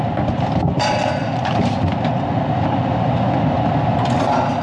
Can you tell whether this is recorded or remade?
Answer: recorded